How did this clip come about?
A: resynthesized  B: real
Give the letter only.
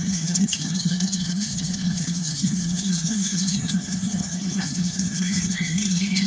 A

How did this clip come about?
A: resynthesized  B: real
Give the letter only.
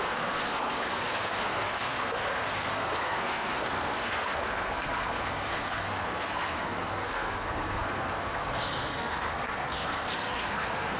A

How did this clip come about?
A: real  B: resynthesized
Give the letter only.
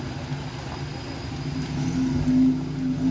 A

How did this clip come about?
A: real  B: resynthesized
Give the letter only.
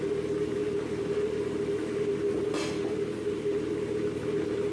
A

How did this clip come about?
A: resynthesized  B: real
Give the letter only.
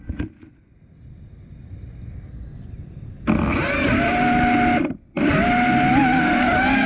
B